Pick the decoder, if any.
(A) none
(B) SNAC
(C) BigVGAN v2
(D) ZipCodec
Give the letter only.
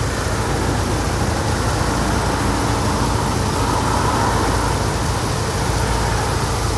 A